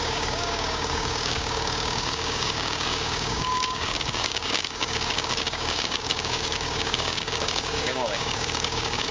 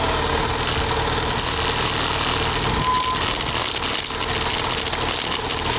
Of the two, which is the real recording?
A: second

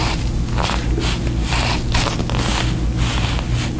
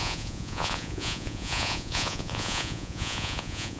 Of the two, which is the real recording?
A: first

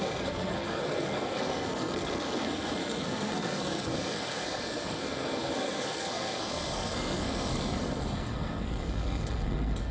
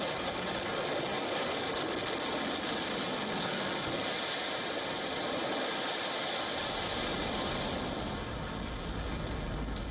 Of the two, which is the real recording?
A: second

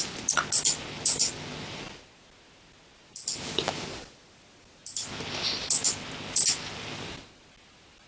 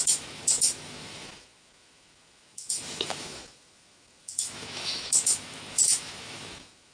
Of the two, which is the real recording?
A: first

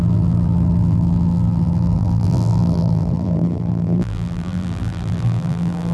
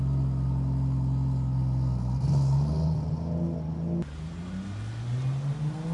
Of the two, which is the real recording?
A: second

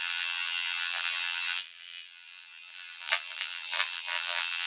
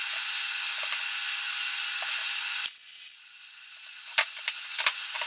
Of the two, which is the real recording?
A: second